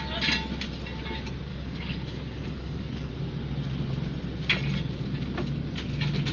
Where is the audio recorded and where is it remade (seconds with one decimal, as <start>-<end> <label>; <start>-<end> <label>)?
0.0-1.5 recorded; 1.5-3.1 remade; 3.1-6.3 recorded